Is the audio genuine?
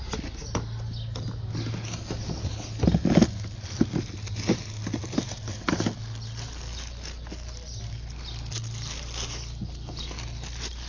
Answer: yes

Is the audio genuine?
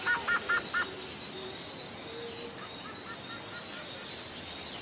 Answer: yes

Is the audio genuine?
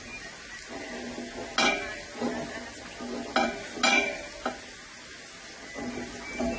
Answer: yes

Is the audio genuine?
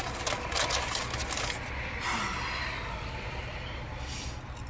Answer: yes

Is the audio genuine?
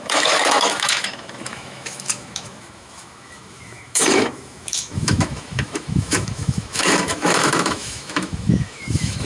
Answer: no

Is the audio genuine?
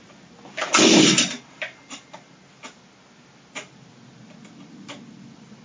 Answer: yes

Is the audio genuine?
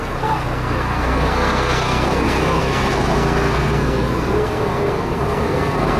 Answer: no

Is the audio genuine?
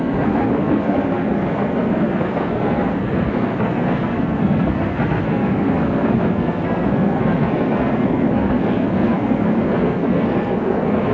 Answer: no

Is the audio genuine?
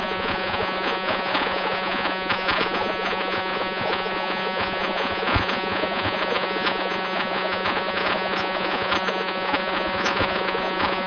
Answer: no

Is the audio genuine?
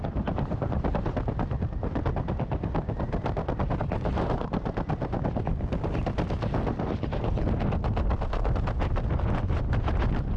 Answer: yes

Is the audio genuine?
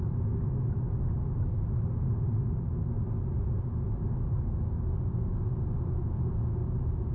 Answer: yes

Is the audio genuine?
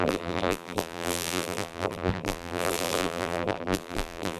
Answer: no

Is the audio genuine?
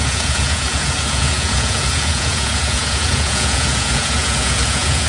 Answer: no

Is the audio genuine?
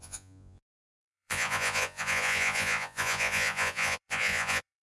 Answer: no